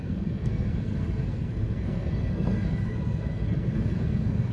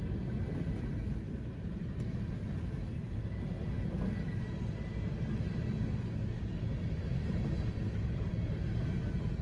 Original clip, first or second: second